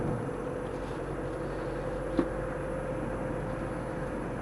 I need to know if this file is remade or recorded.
recorded